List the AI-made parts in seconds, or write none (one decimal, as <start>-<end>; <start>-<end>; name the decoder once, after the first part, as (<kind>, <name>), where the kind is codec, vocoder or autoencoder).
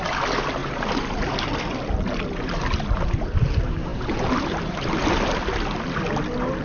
0.6-1.2 (vocoder, BigVGAN v2); 3.9-4.9